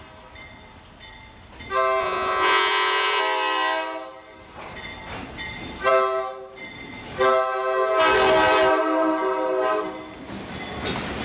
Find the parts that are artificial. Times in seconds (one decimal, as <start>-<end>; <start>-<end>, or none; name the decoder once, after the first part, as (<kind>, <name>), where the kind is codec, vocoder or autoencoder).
2.0-3.2 (vocoder, Vocos)